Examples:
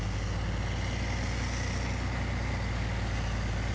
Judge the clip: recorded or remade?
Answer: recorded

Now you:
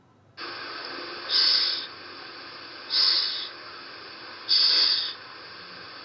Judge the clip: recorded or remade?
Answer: recorded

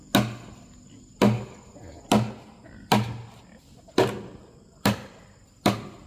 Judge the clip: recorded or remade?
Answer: recorded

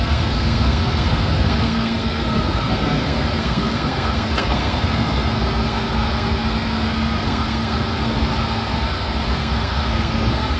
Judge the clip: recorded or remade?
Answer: remade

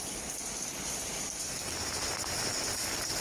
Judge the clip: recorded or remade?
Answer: recorded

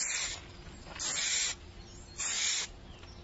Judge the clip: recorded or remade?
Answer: recorded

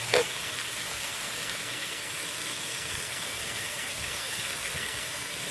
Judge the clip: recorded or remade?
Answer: remade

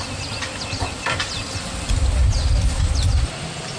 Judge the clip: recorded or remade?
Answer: recorded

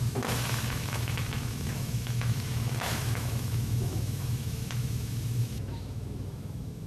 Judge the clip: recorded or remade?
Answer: remade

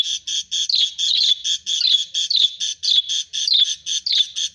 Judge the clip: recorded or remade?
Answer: recorded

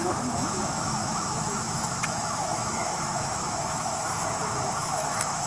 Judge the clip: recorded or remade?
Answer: remade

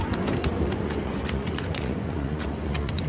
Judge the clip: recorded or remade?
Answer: remade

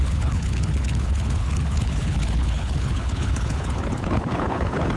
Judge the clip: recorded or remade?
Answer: remade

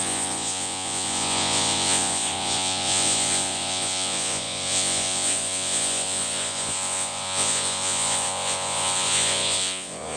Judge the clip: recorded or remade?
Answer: remade